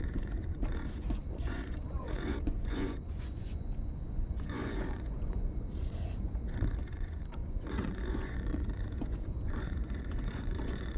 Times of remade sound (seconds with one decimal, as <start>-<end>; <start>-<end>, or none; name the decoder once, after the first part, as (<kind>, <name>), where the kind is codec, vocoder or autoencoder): 0.0-11.0 (vocoder, Vocos)